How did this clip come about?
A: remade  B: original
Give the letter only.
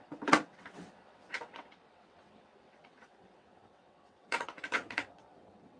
A